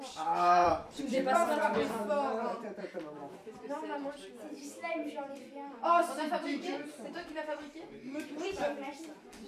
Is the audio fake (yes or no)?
yes